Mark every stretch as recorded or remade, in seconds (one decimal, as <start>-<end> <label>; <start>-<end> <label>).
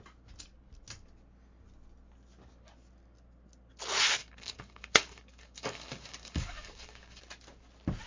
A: 0.0-4.2 recorded; 4.2-7.2 remade; 7.2-8.1 recorded